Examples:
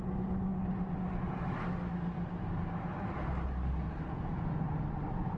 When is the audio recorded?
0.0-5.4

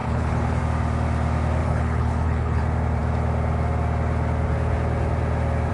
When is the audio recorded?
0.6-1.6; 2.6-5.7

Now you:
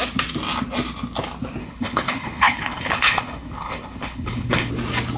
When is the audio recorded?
0.0-1.6; 4.7-5.2

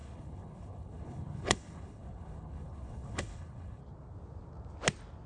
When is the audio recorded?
3.8-5.3

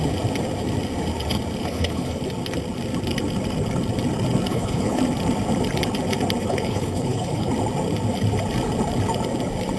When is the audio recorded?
0.0-1.6; 2.2-4.5; 5.0-6.4; 7.5-9.8